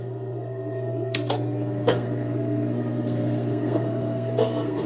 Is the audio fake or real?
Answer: fake